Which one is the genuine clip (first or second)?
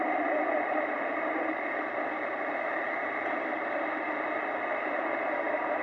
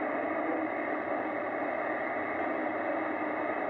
second